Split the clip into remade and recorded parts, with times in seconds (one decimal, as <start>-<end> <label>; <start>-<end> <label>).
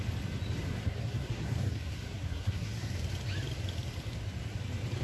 0.0-0.7 recorded; 0.7-2.9 remade; 2.9-5.0 recorded